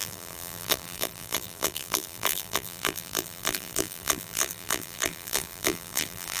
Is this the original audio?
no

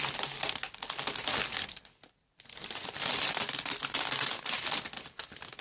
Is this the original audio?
no